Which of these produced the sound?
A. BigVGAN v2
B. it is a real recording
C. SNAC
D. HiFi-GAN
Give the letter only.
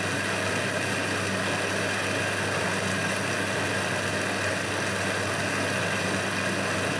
B